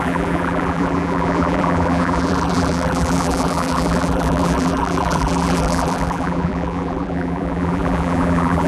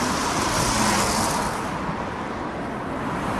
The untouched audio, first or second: second